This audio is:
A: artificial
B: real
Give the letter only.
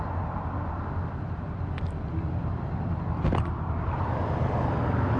B